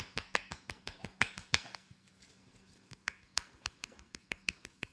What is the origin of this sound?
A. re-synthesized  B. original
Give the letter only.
A